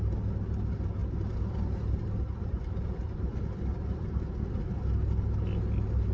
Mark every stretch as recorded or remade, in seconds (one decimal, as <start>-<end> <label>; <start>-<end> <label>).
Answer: 0.0-1.0 recorded; 1.0-4.7 remade; 4.7-6.1 recorded